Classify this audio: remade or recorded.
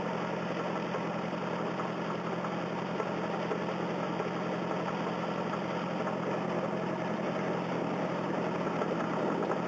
recorded